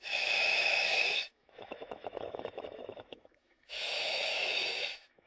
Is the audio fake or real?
fake